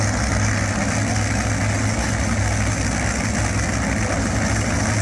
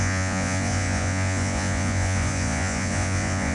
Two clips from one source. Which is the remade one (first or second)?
second